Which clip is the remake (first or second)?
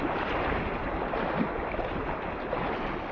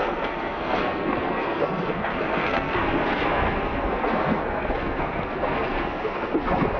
second